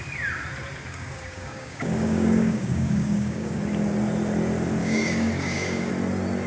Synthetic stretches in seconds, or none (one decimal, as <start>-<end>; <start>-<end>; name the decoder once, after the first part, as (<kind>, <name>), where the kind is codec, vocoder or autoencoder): 0.9-3.6 (codec, DAC); 4.8-5.9